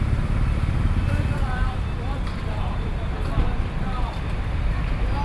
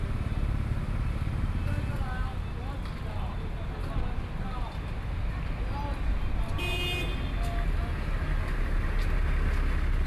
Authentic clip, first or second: second